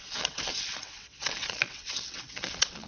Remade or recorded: remade